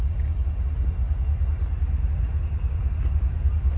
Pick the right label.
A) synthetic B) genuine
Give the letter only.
B